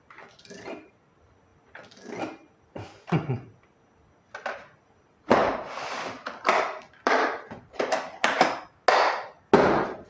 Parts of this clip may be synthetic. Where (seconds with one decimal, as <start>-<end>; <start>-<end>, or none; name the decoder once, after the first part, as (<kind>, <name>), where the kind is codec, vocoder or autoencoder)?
5.4-8.6 (vocoder, BigVGAN v2)